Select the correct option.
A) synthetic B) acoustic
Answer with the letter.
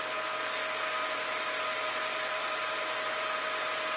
B